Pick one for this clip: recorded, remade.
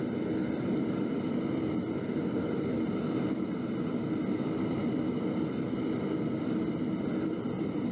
recorded